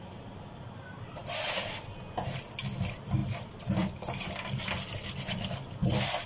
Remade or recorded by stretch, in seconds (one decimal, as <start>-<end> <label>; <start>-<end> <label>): 0.0-6.3 recorded